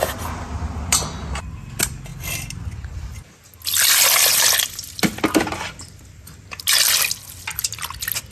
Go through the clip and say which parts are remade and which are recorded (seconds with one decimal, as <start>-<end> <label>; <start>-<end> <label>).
0.0-8.3 recorded